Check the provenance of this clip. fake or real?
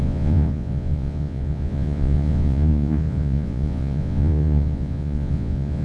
fake